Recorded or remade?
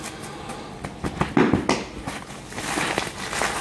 recorded